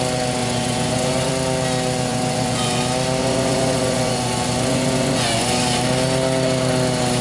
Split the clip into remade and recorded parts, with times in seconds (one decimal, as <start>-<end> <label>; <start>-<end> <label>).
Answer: 0.0-0.4 recorded; 0.4-1.3 remade; 1.3-2.1 recorded; 2.1-2.8 remade; 2.8-3.2 recorded; 3.2-5.6 remade; 5.6-7.2 recorded